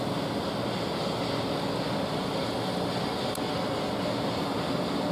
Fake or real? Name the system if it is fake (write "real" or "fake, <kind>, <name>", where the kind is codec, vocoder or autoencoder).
real